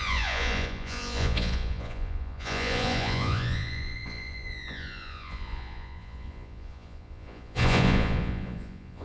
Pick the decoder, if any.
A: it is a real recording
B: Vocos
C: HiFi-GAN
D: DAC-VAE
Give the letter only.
B